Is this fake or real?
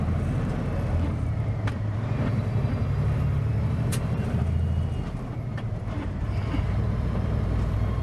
fake